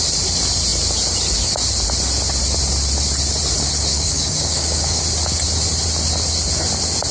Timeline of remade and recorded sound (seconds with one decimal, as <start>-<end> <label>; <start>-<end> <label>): 0.0-3.9 recorded; 3.9-5.0 remade; 5.0-7.1 recorded